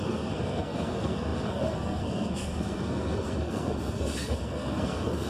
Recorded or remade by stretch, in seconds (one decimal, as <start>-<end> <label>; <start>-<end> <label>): 0.0-5.3 remade